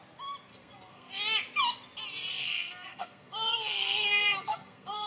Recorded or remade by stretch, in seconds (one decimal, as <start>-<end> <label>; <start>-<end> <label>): 0.0-0.5 recorded; 0.5-1.1 remade; 1.1-2.3 recorded; 2.3-5.1 remade